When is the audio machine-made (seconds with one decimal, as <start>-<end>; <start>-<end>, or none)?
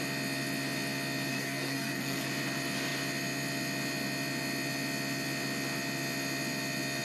1.3-2.3